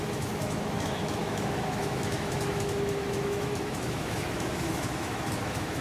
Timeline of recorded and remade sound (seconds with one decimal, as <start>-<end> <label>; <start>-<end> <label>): 0.0-5.8 remade